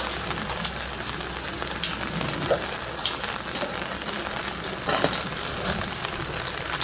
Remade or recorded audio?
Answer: recorded